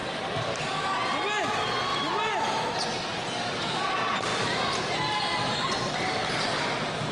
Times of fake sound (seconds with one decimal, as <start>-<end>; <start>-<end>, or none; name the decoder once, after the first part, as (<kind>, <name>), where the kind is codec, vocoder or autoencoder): 0.0-0.6 (vocoder, BigVGAN v2); 1.9-2.6; 4.3-5.2